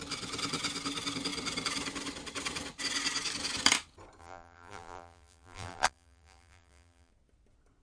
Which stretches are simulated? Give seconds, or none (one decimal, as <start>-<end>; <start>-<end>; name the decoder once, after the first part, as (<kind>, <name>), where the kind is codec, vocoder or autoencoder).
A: 4.2-7.1 (vocoder, BigVGAN v2)